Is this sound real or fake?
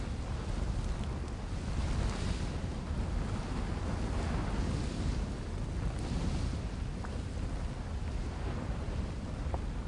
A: real